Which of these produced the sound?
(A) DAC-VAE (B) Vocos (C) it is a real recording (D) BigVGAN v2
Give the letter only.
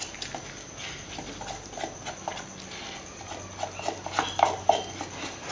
C